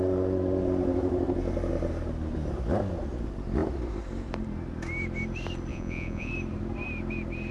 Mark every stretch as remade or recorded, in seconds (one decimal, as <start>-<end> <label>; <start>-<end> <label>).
0.0-5.7 recorded; 5.7-6.3 remade; 6.3-7.5 recorded